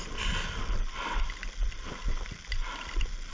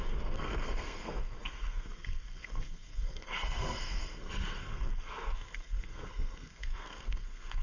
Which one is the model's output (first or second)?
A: second